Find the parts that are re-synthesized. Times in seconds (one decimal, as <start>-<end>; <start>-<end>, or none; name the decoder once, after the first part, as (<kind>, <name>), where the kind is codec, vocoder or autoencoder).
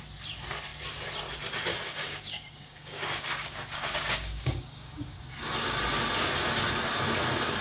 1.7-5.2 (codec, DAC)